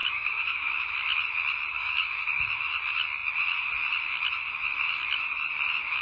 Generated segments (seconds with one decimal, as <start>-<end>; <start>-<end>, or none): 0.0-0.9; 1.7-2.2

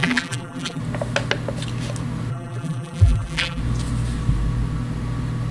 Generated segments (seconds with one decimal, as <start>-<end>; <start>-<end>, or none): 0.0-0.8; 2.3-3.6